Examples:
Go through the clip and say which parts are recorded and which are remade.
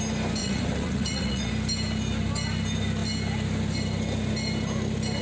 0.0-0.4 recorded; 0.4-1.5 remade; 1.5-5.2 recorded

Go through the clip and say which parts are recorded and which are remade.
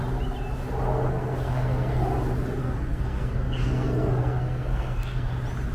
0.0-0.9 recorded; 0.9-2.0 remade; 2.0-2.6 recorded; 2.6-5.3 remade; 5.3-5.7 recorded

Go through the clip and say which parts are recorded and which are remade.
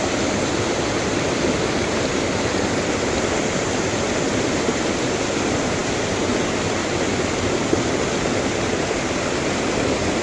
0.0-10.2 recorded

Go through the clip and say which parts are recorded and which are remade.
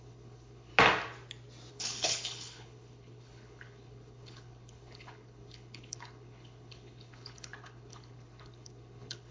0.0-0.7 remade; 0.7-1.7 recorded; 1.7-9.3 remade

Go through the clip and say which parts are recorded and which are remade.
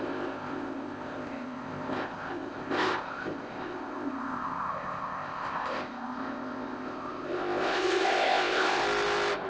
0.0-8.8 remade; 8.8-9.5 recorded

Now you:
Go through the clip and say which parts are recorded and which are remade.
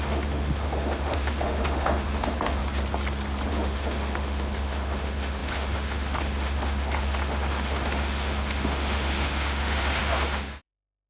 0.0-2.6 remade; 2.6-3.5 recorded; 3.5-11.1 remade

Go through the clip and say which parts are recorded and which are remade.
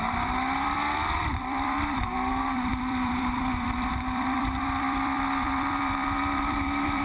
0.0-7.0 remade